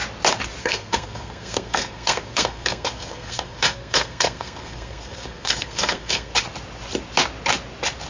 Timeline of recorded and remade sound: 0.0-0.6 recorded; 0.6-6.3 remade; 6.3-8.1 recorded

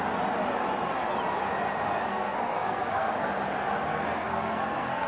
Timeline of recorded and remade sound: 0.0-2.1 recorded; 2.1-3.3 remade; 3.3-3.9 recorded; 3.9-5.1 remade

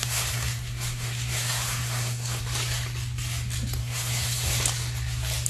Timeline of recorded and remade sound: 0.0-2.4 remade; 2.4-3.8 recorded; 3.8-4.6 remade; 4.6-5.5 recorded